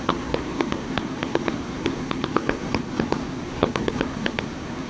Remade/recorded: remade